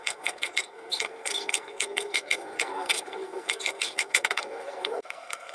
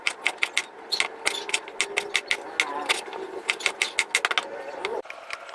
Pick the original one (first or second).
second